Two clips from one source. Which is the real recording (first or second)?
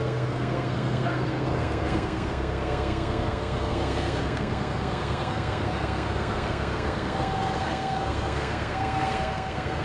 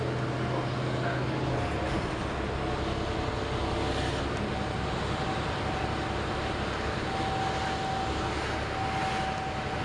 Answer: second